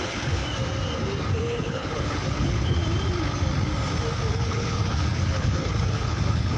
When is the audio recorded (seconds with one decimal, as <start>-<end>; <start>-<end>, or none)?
0.4-1.4; 2.8-4.3